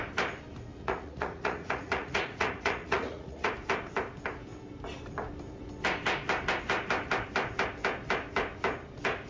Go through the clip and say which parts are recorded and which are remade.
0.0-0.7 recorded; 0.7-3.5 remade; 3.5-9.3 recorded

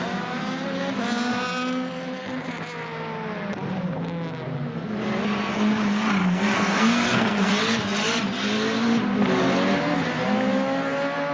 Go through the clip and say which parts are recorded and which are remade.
0.0-6.2 recorded; 6.2-7.5 remade; 7.5-11.3 recorded

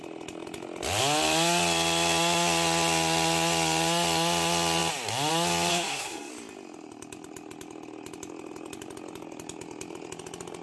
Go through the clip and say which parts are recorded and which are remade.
0.0-5.7 recorded; 5.7-6.3 remade; 6.3-10.6 recorded

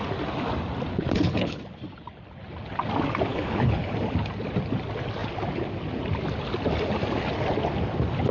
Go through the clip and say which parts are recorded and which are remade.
0.0-0.9 recorded; 0.9-1.6 remade; 1.6-3.3 recorded; 3.3-3.9 remade; 3.9-8.3 recorded